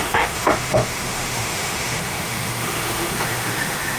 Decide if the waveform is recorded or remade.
remade